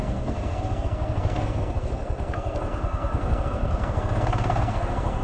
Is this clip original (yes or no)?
no